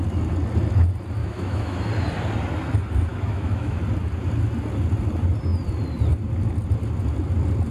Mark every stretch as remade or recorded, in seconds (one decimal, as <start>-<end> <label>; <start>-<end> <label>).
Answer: 0.0-1.2 recorded; 1.2-1.9 remade; 1.9-3.1 recorded; 3.1-3.8 remade; 3.8-7.7 recorded